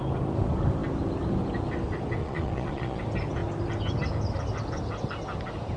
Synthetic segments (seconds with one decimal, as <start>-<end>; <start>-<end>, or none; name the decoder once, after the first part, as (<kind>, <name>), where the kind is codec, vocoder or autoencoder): 2.2-3.0 (vocoder, Vocos)